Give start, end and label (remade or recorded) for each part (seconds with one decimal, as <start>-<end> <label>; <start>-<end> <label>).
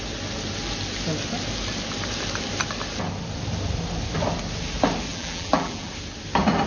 0.0-5.1 recorded; 5.1-5.9 remade; 5.9-6.7 recorded